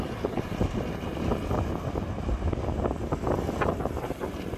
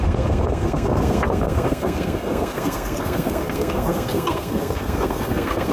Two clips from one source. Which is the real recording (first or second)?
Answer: first